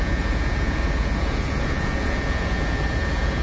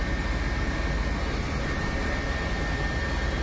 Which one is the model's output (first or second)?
first